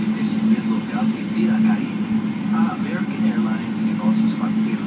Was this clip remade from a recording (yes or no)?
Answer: no